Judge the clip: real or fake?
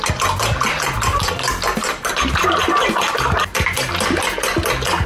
real